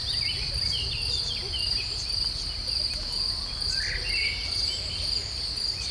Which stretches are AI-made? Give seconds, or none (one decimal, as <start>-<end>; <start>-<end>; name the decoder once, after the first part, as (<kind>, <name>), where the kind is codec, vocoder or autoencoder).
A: none